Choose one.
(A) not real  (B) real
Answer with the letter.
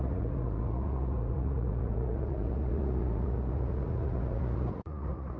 A